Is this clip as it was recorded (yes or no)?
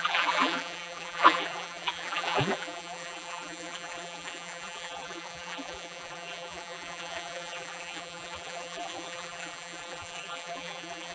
no